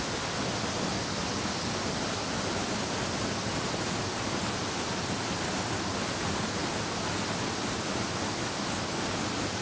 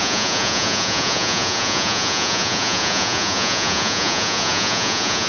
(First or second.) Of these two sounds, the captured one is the first